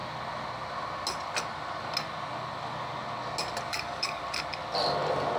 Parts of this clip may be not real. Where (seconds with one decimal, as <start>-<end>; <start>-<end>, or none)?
3.7-4.2